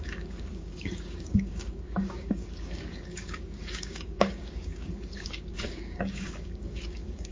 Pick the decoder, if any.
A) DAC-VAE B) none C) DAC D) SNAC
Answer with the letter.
C